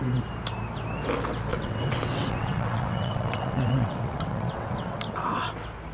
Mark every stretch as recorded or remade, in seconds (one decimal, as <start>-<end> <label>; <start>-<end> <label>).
0.0-1.5 recorded; 1.5-5.0 remade; 5.0-5.9 recorded